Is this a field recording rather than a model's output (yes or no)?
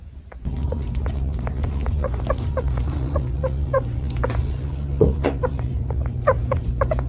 no